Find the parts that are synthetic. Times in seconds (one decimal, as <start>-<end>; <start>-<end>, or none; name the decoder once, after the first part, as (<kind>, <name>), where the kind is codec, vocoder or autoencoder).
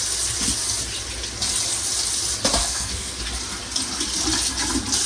2.6-3.2 (codec, SNAC)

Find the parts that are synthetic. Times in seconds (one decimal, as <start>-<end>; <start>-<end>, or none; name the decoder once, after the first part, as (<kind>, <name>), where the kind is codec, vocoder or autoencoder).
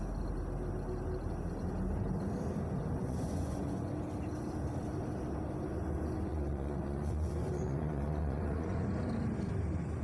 3.0-3.9 (vocoder, Vocos); 6.3-8.8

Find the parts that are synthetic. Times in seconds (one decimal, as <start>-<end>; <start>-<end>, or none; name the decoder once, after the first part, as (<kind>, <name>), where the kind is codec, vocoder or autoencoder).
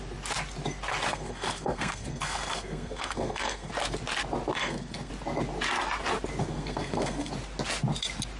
1.1-3.7 (codec, SNAC); 4.5-5.1; 6.4-7.3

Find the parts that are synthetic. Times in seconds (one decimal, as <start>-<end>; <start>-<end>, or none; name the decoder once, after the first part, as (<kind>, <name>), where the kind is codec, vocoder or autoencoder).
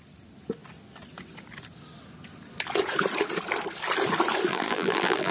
4.5-5.3 (vocoder, BigVGAN v2)